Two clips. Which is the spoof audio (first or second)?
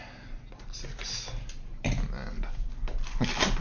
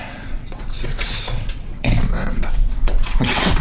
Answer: second